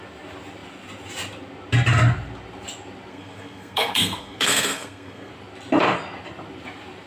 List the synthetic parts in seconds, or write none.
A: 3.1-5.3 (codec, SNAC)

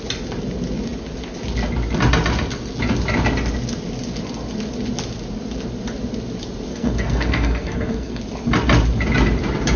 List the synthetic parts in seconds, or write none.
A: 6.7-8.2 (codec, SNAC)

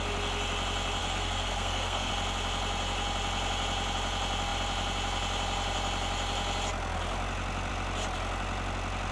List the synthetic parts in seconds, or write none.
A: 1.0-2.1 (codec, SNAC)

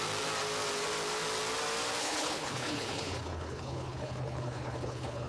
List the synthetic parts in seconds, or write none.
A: 2.0-5.3 (codec, HILCodec)

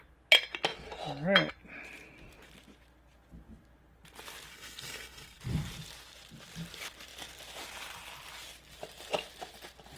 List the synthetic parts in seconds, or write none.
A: 4.5-5.4 (codec, SNAC)

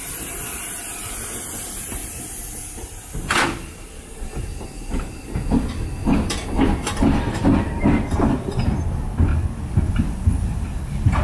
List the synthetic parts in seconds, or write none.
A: none